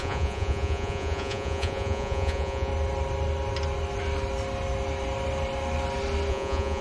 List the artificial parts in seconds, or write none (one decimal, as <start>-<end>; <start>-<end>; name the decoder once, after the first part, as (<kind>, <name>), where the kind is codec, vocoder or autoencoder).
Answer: 0.0-2.7 (vocoder, Vocos); 6.3-6.8